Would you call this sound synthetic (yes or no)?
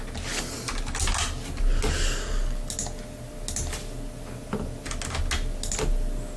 no